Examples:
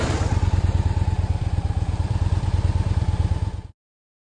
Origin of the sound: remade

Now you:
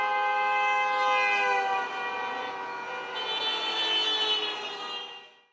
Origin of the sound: recorded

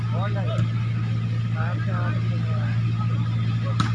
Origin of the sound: recorded